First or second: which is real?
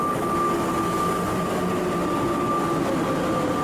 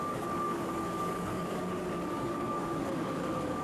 first